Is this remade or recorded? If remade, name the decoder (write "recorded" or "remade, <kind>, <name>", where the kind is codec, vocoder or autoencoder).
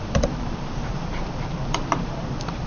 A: remade, vocoder, BigVGAN v2